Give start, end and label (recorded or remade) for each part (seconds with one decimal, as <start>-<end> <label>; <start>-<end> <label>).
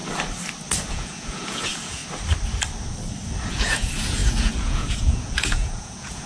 0.0-0.9 recorded; 0.9-2.0 remade; 2.0-3.5 recorded; 3.5-6.3 remade